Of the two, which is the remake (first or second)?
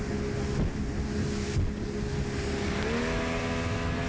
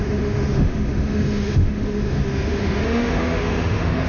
second